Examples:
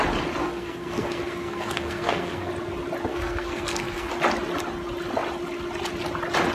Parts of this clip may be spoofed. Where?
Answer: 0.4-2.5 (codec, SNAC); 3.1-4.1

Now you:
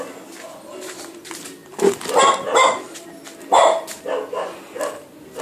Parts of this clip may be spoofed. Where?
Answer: 1.6-2.8 (vocoder, BigVGAN v2)

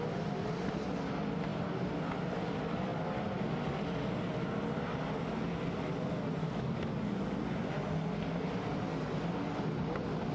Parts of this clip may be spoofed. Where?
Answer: 6.4-7.4 (codec, DAC)

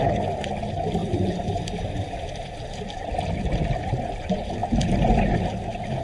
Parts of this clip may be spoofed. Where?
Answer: none

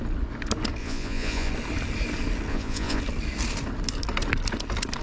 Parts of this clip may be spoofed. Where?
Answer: 0.8-1.5 (vocoder, Vocos); 2.5-3.0

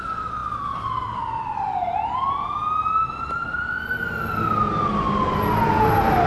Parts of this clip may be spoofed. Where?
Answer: none